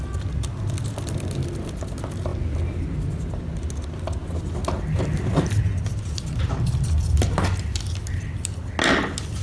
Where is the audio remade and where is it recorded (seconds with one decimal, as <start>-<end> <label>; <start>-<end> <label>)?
0.0-9.4 recorded